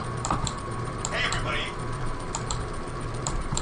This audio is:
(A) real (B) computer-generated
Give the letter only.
B